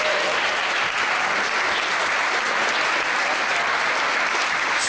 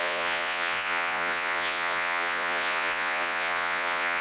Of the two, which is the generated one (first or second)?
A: second